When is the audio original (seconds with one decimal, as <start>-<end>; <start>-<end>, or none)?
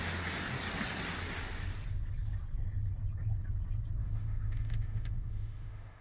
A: 0.0-4.0